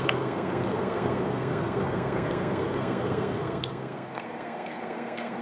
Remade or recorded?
remade